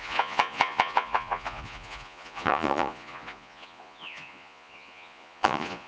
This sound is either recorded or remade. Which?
remade